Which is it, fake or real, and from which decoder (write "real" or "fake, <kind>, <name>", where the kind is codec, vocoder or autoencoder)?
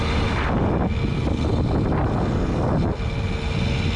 real